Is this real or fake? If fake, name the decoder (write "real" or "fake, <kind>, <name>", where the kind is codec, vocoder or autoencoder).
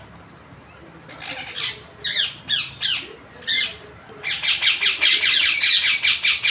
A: real